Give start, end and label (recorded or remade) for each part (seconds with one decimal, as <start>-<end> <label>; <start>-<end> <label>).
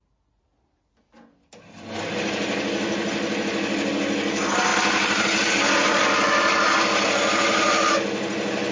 0.0-8.7 recorded